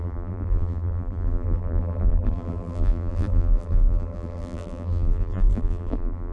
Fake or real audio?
fake